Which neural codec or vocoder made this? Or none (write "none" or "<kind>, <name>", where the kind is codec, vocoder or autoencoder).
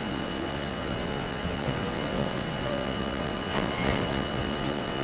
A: vocoder, WaveNeXt